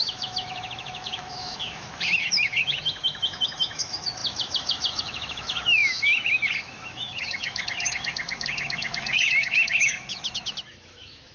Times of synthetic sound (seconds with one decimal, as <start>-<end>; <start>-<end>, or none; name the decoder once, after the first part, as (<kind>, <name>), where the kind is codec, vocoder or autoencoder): 0.0-11.3 (autoencoder, DAC-VAE)

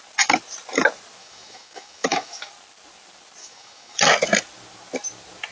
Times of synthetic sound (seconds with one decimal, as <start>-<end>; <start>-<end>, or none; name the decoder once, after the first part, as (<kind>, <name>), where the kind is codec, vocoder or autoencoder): 1.2-2.5 (autoencoder, DAC-VAE); 3.4-4.0

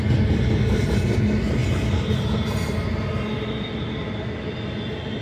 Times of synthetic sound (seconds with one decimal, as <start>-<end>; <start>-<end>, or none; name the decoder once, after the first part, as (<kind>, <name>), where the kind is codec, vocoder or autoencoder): none

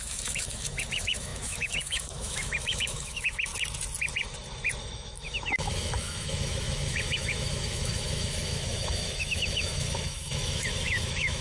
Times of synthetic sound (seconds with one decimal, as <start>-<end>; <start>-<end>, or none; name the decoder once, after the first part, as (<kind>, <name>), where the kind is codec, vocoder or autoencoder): 0.0-3.5 (autoencoder, DAC-VAE); 4.8-11.4

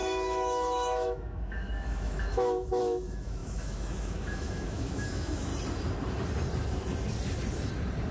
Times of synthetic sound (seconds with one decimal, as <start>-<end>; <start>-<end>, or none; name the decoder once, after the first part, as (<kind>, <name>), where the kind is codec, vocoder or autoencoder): 0.0-5.5 (autoencoder, DAC-VAE)

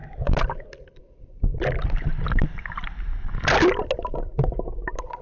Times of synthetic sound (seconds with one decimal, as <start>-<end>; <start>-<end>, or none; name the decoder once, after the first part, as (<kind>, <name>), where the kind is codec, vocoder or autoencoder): none

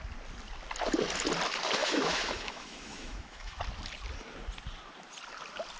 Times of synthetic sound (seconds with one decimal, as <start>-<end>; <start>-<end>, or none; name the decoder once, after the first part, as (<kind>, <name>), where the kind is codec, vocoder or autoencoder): 1.8-3.6 (autoencoder, DAC-VAE)